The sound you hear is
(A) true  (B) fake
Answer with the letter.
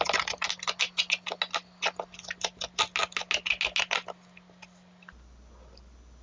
A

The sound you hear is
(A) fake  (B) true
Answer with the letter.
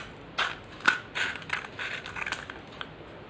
B